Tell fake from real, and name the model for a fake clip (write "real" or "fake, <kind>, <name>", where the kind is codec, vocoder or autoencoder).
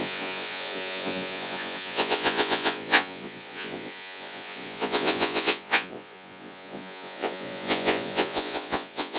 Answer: fake, vocoder, Vocos